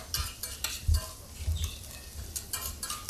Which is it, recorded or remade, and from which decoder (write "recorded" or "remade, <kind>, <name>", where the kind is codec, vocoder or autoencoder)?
recorded